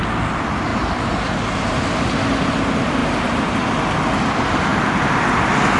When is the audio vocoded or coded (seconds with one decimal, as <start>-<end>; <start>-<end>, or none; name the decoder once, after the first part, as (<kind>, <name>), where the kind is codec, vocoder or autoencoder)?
0.7-1.7 (vocoder, BigVGAN v2); 3.0-3.5